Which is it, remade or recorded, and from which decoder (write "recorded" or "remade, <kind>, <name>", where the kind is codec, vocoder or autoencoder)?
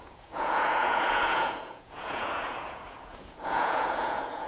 remade, vocoder, Vocos